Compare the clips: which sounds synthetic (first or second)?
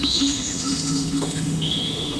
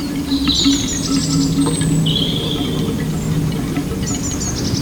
first